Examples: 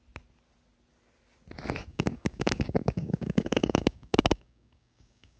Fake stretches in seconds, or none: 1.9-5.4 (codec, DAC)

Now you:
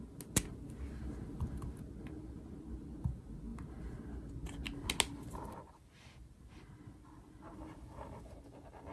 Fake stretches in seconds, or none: none